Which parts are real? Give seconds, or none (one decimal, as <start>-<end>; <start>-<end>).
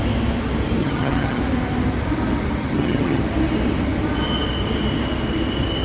0.0-0.8; 1.4-2.6; 3.2-5.8